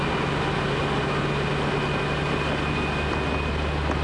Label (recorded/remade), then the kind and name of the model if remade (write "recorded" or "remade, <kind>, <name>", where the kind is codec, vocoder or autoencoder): recorded